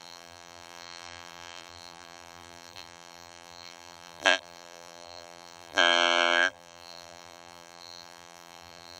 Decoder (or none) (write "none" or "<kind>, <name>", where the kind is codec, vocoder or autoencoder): vocoder, BigVGAN v2